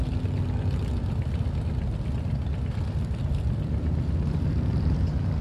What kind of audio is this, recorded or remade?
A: recorded